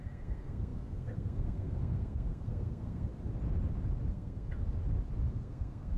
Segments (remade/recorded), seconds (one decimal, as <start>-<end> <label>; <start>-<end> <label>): 0.0-3.1 remade; 3.1-4.1 recorded; 4.1-4.5 remade; 4.5-5.3 recorded; 5.3-6.0 remade